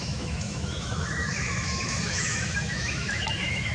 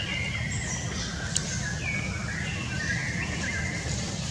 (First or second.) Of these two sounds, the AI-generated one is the first